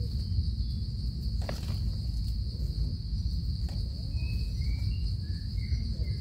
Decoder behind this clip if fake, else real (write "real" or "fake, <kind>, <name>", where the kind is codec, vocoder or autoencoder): real